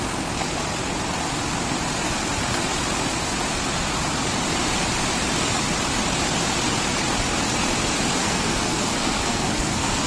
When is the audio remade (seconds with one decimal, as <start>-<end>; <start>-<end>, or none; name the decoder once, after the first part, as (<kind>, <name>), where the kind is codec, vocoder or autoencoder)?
8.2-10.1 (codec, SNAC)